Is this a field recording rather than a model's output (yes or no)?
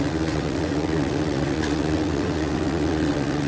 no